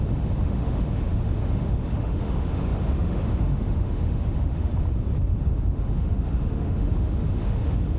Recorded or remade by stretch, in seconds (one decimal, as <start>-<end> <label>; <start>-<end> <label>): 0.0-4.7 remade; 4.7-5.2 recorded; 5.2-8.0 remade